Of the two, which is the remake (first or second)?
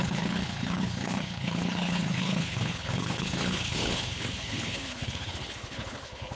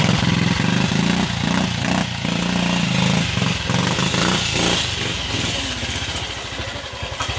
first